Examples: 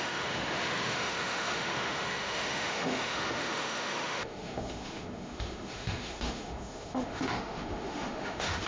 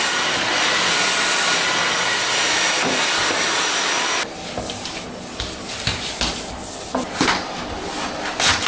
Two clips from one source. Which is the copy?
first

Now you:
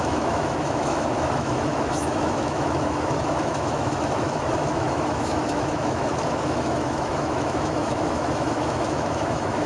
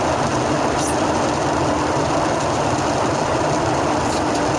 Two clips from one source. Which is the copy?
first